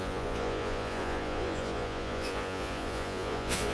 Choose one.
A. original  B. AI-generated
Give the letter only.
B